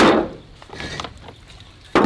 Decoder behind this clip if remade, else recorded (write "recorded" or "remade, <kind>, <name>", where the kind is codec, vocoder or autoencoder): recorded